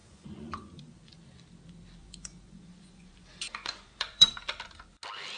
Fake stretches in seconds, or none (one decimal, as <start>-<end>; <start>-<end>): 0.0-1.2; 2.0-4.3

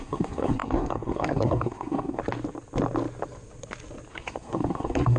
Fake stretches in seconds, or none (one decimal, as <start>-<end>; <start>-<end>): 0.0-2.2; 4.1-5.2